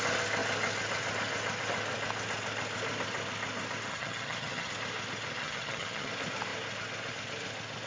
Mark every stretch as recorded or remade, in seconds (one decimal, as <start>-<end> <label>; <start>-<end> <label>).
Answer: 0.0-3.9 recorded; 3.9-4.7 remade; 4.7-5.4 recorded; 5.4-6.1 remade; 6.1-7.9 recorded